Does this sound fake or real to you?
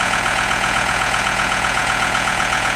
fake